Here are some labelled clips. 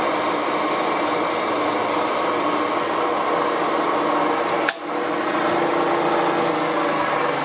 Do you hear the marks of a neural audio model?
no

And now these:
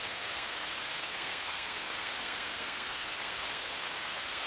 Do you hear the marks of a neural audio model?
yes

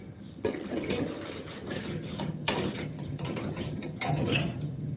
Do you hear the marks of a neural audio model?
yes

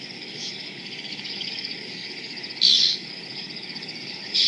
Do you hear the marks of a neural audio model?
yes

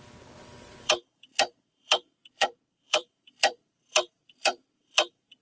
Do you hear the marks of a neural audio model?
yes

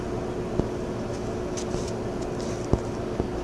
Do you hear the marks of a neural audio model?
no